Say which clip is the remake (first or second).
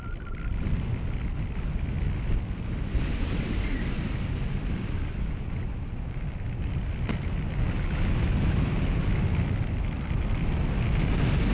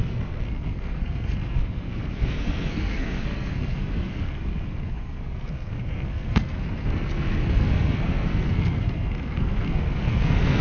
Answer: second